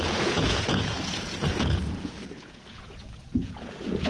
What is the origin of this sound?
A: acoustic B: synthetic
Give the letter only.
B